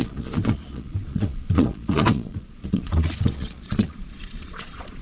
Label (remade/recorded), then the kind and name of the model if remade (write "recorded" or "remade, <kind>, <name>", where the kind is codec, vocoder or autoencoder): remade, vocoder, Vocos